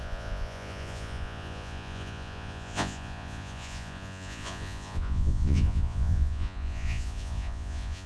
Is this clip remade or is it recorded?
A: remade